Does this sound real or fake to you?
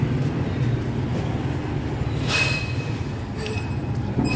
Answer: real